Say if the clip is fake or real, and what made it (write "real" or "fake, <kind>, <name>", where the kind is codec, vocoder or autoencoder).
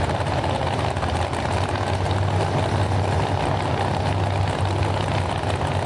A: real